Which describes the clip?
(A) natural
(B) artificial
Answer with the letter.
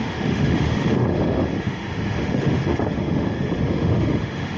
B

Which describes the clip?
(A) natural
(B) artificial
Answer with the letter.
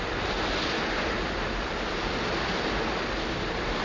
A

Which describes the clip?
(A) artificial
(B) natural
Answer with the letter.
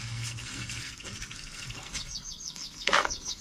A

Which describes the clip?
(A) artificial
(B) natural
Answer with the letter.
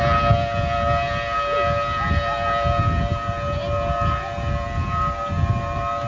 B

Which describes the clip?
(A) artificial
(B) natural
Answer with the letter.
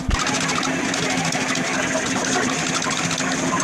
B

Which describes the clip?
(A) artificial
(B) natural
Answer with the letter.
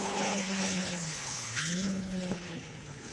A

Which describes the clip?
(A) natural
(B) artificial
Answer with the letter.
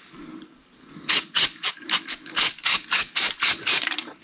B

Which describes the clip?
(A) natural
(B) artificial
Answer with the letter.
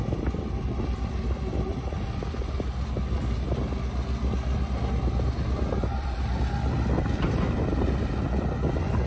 A